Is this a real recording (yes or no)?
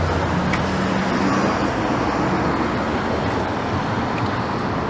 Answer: yes